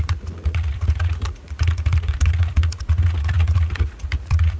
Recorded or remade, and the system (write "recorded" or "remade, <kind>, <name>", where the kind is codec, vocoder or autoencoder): remade, vocoder, Vocos